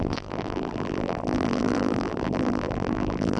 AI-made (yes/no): yes